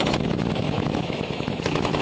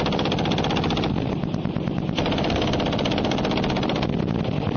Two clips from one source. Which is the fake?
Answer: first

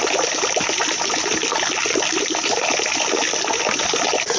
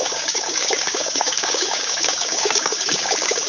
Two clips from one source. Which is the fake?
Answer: second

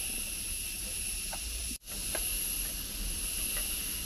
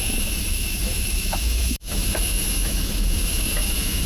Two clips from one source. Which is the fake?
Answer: second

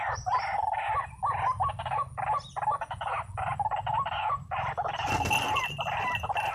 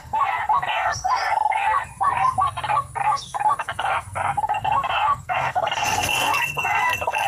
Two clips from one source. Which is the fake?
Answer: second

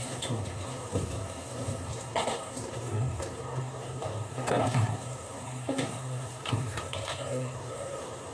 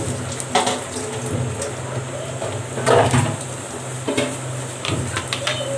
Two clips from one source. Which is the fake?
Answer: first